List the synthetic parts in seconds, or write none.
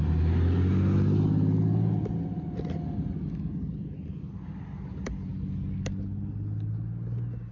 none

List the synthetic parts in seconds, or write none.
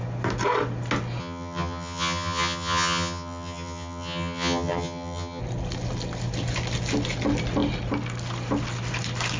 1.2-5.4 (vocoder, HiFi-GAN)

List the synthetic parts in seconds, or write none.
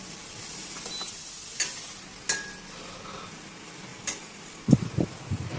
none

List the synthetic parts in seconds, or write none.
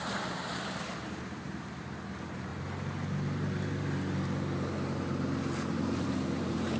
0.0-2.5 (vocoder, BigVGAN v2); 5.7-6.8